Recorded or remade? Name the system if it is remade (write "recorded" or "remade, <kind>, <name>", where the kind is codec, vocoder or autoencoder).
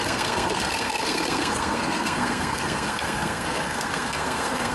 remade, codec, SNAC